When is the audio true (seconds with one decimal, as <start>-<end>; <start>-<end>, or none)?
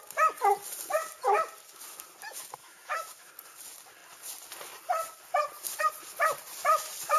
0.0-2.6; 3.3-7.2